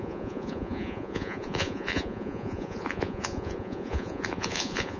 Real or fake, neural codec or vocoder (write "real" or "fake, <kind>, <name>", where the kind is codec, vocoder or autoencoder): fake, vocoder, Vocos